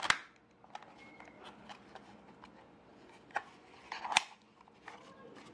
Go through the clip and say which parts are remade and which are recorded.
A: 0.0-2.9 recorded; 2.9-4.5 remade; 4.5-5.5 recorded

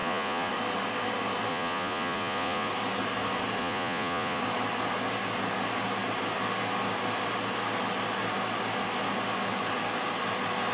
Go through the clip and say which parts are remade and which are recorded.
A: 0.0-0.5 remade; 0.5-1.5 recorded; 1.5-2.7 remade; 2.7-3.6 recorded; 3.6-4.4 remade; 4.4-10.7 recorded